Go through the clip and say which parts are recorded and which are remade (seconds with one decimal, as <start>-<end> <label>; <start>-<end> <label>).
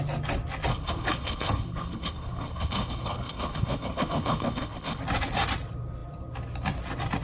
0.0-0.7 recorded; 0.7-5.0 remade; 5.0-7.2 recorded